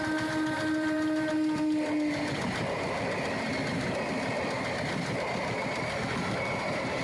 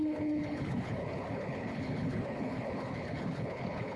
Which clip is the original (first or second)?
first